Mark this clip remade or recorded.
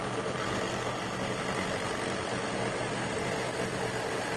recorded